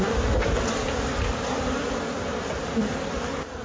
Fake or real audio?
real